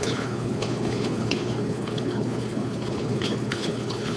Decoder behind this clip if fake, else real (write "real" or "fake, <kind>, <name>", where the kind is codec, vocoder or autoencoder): fake, codec, HILCodec